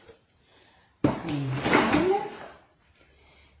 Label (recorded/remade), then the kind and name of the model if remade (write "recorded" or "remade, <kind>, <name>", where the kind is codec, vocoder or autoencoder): remade, vocoder, BigVGAN v2